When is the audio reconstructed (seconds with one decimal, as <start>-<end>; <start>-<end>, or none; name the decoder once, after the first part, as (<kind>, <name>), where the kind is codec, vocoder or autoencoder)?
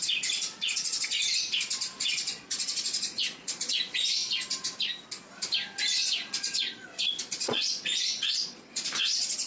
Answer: 0.6-1.2 (vocoder, Vocos); 2.0-4.2; 5.9-9.5